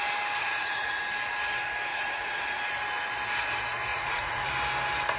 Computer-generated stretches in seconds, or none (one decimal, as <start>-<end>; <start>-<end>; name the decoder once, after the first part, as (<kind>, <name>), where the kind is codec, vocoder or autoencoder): 0.4-1.0 (vocoder, Vocos); 1.9-2.6; 3.9-4.5